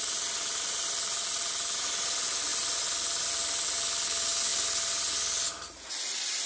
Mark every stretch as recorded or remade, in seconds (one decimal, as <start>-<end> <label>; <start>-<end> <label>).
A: 0.0-6.5 recorded